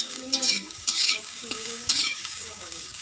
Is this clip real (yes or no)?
no